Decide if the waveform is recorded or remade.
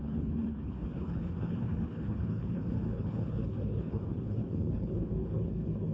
remade